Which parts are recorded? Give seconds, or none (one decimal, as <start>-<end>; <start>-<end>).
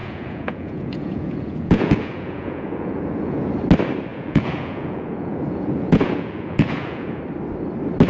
3.5-4.1; 7.2-8.1